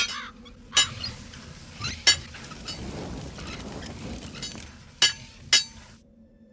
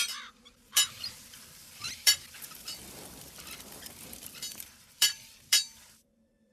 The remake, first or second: second